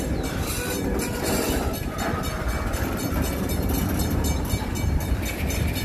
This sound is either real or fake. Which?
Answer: real